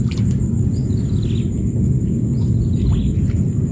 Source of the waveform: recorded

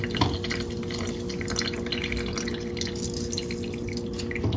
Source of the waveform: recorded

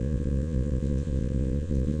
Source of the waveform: remade